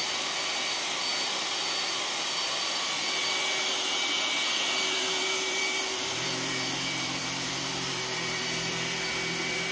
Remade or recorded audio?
remade